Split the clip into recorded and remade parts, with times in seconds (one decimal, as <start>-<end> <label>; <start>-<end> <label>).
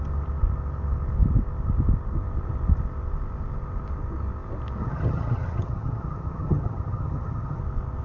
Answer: 0.0-4.8 recorded; 4.8-7.6 remade; 7.6-8.0 recorded